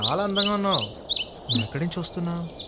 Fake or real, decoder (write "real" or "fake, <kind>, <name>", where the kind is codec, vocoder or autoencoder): real